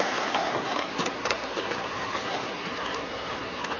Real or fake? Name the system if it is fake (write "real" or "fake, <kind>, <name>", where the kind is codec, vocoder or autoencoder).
fake, codec, SNAC